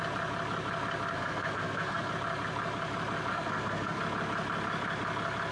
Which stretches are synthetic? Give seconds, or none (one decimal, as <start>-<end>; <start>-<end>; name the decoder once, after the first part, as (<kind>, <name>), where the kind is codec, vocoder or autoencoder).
1.1-2.1 (codec, SNAC); 3.3-4.0